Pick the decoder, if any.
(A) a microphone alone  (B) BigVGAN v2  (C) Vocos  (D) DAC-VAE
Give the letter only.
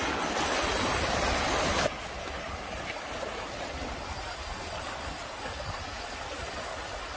A